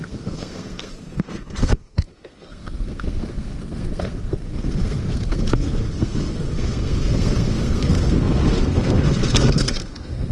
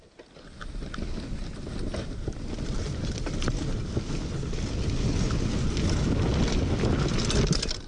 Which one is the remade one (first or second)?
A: first